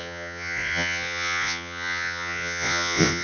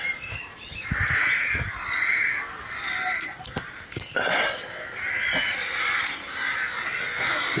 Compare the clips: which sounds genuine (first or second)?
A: second